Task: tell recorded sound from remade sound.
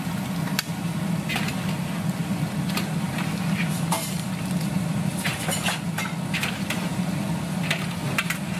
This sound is recorded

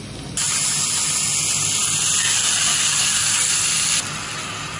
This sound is recorded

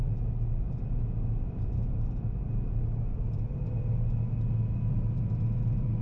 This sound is recorded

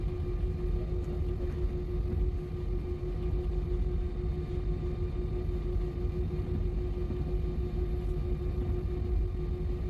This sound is recorded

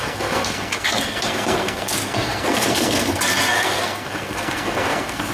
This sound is remade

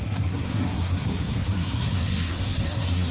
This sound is remade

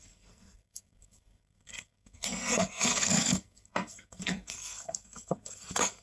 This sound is remade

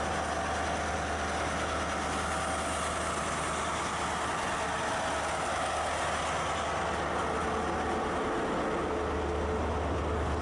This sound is recorded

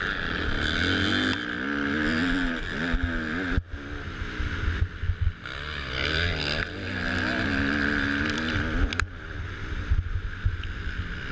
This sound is recorded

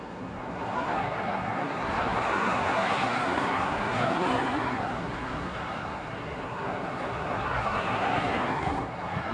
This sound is remade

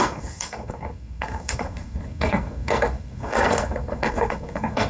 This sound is remade